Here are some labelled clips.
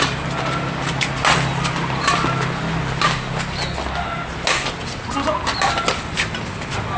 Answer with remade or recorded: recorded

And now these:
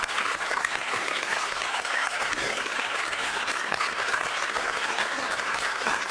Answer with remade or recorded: remade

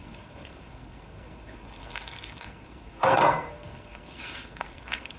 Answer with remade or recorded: remade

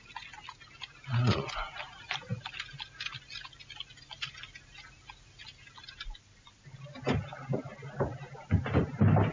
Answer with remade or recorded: recorded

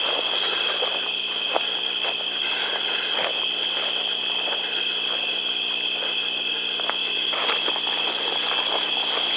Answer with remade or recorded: recorded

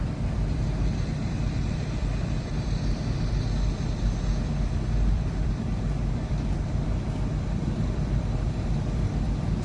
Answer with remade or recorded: remade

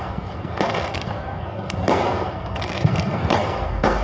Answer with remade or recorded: remade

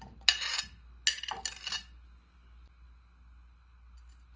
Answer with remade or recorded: recorded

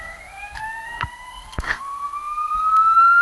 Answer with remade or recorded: remade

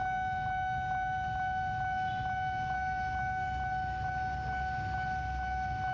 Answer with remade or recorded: recorded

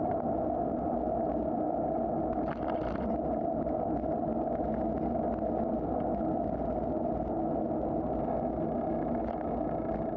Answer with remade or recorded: recorded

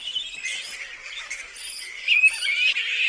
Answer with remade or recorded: recorded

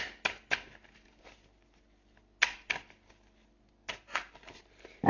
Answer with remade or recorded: recorded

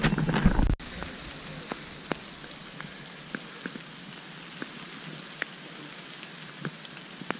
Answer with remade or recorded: recorded